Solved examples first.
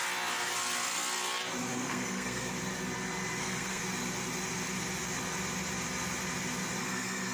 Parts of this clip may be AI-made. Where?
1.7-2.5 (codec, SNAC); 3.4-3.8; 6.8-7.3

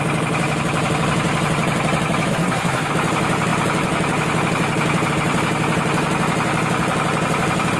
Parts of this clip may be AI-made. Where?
2.3-2.9 (codec, SNAC)

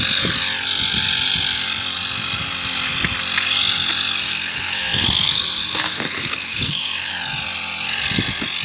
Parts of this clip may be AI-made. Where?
4.3-7.1 (codec, SNAC)

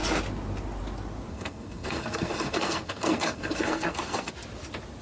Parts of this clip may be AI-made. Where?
1.3-4.3 (codec, SNAC)

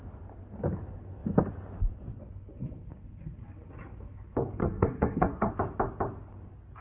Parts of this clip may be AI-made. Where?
4.6-5.5 (codec, SNAC)